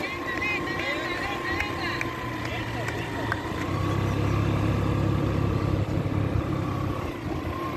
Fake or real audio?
real